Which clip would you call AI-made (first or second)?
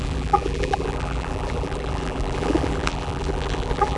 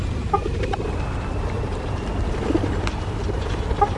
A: first